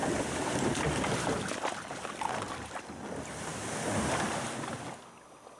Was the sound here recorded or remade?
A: recorded